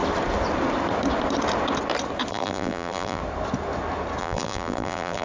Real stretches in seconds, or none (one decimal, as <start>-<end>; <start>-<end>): 0.0-2.3; 3.2-4.2